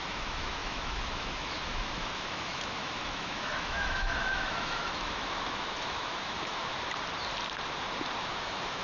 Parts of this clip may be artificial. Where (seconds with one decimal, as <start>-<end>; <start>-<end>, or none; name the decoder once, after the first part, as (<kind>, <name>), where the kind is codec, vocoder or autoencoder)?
0.0-6.7 (autoencoder, DAC-VAE); 8.2-8.8